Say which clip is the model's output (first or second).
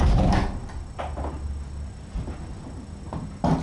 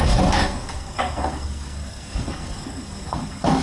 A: second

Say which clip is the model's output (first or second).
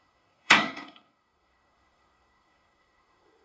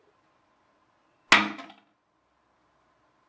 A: first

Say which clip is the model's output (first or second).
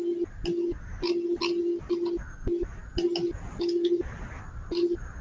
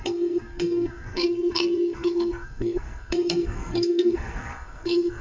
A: second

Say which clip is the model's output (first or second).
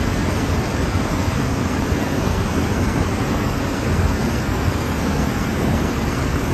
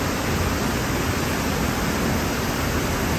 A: first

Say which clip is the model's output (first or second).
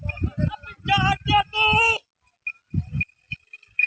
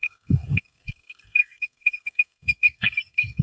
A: second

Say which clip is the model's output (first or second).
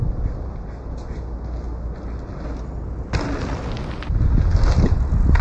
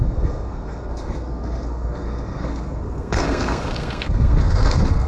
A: second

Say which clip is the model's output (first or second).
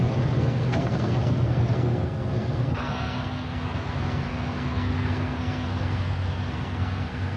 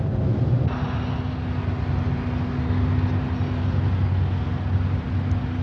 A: first